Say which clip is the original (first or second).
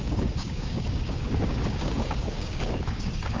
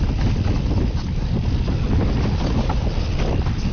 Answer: second